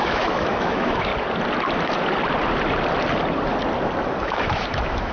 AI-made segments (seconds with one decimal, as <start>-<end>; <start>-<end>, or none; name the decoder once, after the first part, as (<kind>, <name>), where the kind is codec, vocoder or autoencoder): 0.0-1.1 (autoencoder, DAC-VAE); 4.2-5.1